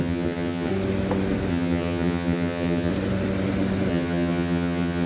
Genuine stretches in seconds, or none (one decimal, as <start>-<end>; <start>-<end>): 0.7-1.5; 2.9-3.9